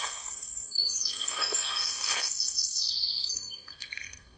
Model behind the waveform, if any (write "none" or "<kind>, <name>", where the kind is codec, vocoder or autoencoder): codec, SNAC